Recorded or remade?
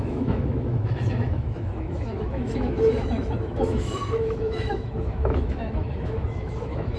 remade